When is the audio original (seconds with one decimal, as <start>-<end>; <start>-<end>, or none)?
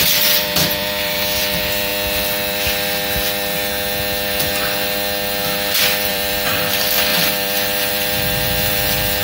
1.9-6.1